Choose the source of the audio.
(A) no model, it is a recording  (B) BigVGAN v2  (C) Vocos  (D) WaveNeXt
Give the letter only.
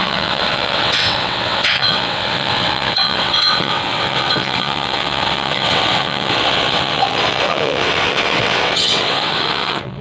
D